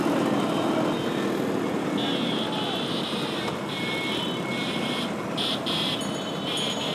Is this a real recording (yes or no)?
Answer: yes